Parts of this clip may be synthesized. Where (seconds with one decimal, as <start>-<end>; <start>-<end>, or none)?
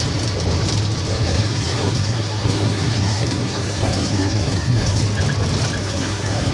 1.1-5.0; 5.8-6.5